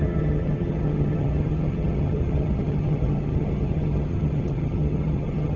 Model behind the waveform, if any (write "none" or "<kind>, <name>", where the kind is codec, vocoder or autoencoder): vocoder, HiFi-GAN